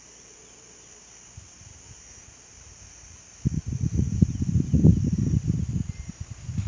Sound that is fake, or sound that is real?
real